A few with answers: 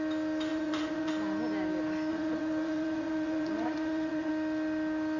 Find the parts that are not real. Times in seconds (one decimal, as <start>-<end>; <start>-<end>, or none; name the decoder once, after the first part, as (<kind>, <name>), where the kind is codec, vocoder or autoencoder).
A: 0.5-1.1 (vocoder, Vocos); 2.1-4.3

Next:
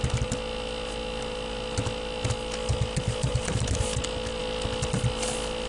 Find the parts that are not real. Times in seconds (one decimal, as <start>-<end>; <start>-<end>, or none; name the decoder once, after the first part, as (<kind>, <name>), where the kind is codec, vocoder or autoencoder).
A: none

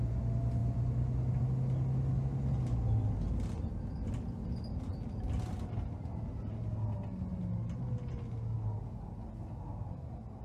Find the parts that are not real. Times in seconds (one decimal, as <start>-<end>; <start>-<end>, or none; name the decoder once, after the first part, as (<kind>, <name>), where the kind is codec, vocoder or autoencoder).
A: none

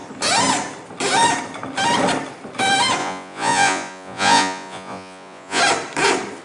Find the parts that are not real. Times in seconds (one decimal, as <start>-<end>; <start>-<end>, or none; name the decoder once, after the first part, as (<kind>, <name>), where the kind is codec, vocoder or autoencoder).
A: 3.0-5.6 (vocoder, Vocos)